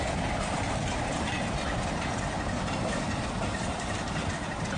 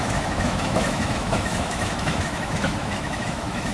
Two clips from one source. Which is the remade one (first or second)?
second